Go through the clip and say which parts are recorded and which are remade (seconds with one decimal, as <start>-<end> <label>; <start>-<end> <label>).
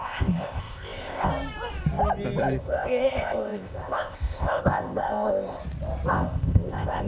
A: 0.0-1.3 remade; 1.3-2.6 recorded; 2.6-5.6 remade; 5.6-6.1 recorded; 6.1-7.1 remade